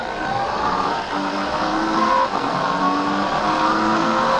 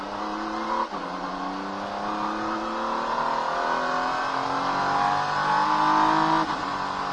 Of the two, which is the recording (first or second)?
second